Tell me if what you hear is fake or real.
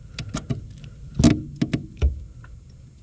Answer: real